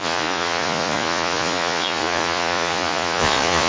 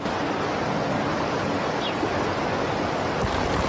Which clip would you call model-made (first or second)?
first